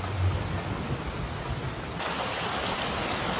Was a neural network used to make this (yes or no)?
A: no